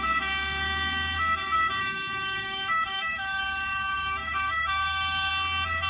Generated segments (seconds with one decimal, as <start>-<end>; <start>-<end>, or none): 1.8-5.3